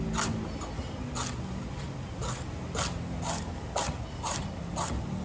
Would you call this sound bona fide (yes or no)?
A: yes